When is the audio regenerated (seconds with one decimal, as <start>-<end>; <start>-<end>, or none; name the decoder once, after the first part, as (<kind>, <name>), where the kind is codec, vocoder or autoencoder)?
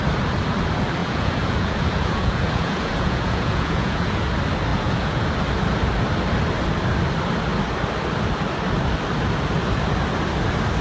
1.0-4.2 (vocoder, Vocos); 4.7-5.3